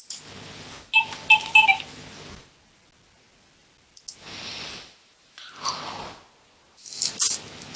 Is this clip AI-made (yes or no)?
no